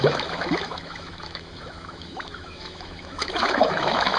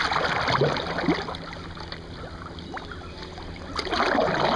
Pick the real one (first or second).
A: second